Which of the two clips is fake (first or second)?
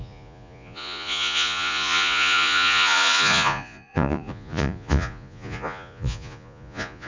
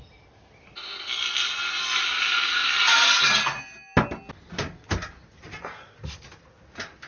first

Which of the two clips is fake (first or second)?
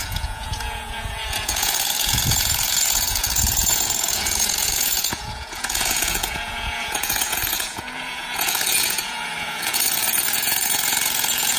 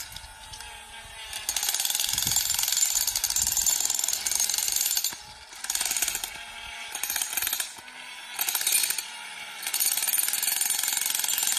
first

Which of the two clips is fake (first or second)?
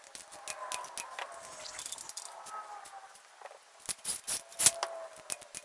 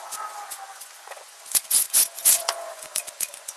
second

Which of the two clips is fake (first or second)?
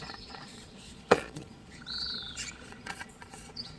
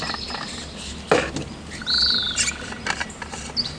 first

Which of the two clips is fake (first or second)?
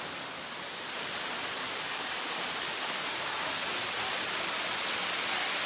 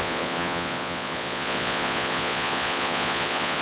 second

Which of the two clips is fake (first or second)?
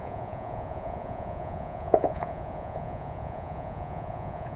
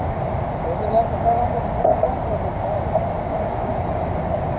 first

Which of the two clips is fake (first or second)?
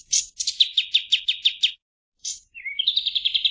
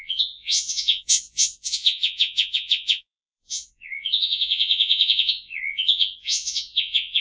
second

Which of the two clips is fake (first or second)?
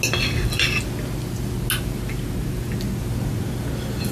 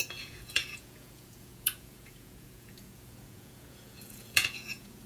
second